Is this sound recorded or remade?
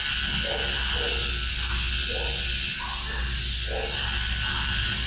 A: recorded